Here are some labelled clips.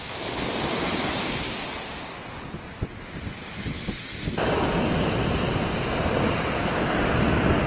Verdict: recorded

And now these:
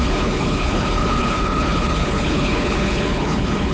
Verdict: remade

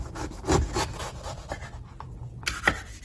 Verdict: recorded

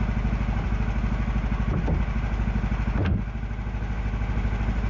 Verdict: recorded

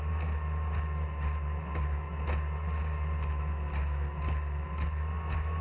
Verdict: recorded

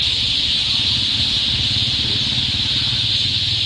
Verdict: recorded